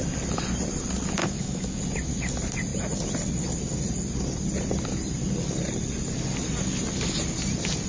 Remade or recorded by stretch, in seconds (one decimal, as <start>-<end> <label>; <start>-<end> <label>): 0.0-1.2 recorded; 1.2-1.8 remade; 1.8-7.9 recorded